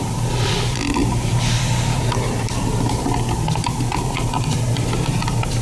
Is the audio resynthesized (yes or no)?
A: yes